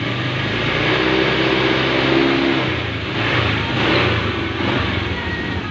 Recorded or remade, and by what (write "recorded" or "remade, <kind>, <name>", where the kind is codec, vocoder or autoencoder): recorded